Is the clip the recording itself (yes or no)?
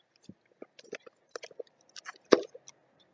yes